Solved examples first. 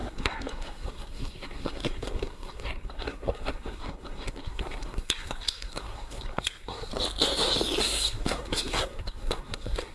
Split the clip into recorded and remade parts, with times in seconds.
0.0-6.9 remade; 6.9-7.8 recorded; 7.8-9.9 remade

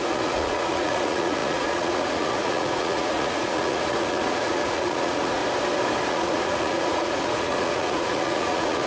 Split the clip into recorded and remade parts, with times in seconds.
0.0-5.4 remade; 5.4-6.1 recorded; 6.1-8.9 remade

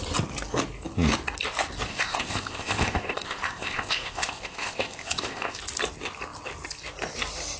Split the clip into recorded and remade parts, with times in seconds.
0.0-1.9 recorded; 1.9-5.6 remade; 5.6-7.6 recorded

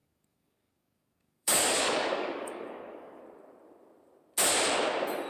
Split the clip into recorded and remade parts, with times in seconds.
0.0-3.2 remade; 3.2-5.3 recorded

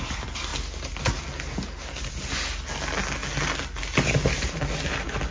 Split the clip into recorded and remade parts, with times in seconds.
0.0-5.3 recorded

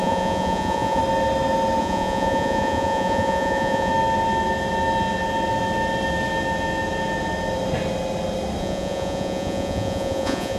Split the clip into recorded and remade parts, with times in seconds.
0.0-1.0 remade; 1.0-1.8 recorded; 1.8-3.9 remade; 3.9-8.6 recorded; 8.6-10.6 remade

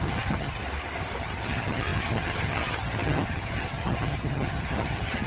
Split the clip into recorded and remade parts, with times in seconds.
0.0-0.6 remade; 0.6-1.2 recorded; 1.2-5.3 remade